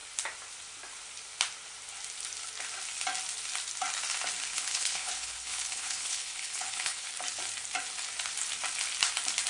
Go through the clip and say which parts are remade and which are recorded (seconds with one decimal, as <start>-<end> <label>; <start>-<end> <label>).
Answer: 0.0-4.5 recorded; 4.5-7.1 remade; 7.1-9.5 recorded